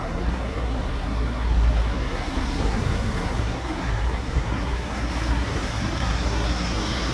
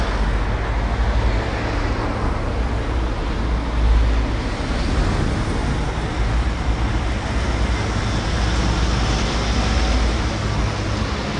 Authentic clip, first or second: second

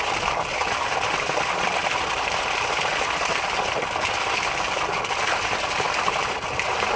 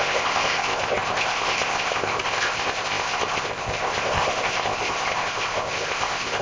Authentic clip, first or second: first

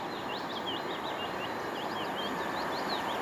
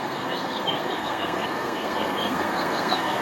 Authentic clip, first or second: first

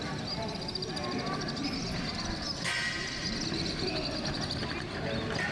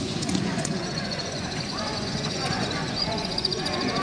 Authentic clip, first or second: first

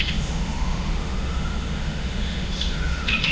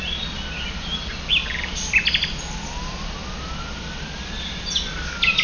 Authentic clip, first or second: second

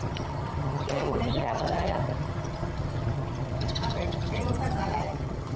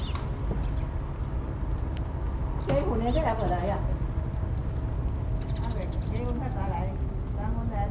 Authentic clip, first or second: second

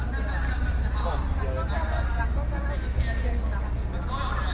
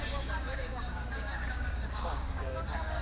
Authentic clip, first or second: first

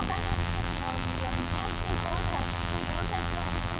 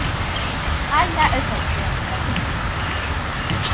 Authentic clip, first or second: second